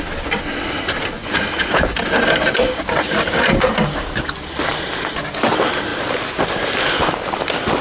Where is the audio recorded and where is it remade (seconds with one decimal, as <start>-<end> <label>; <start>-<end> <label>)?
0.0-5.9 recorded; 5.9-7.8 remade

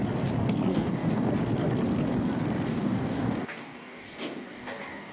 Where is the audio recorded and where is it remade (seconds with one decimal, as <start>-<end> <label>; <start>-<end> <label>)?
0.0-0.7 recorded; 0.7-1.3 remade; 1.3-2.7 recorded; 2.7-5.1 remade

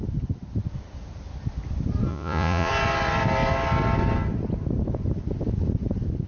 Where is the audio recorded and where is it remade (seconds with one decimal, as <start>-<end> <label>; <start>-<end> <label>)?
0.0-2.1 recorded; 2.1-2.7 remade; 2.7-6.3 recorded